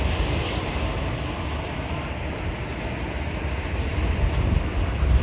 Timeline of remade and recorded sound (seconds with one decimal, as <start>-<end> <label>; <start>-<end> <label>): 0.0-5.2 recorded